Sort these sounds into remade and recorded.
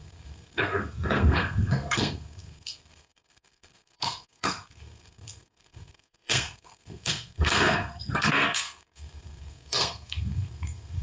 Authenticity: remade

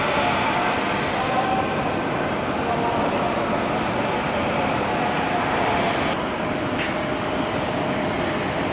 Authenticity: recorded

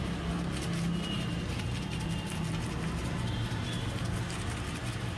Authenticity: recorded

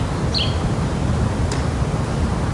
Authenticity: recorded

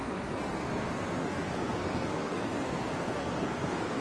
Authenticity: remade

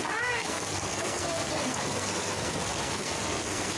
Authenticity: remade